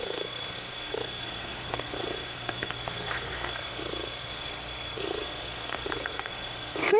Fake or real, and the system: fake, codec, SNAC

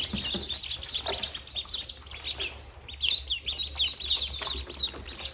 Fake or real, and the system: real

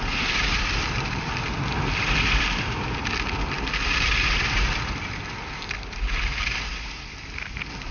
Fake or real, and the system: real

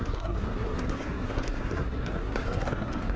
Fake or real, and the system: fake, codec, SNAC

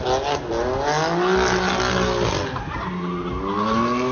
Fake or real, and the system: real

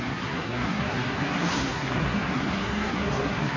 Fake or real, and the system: fake, codec, SNAC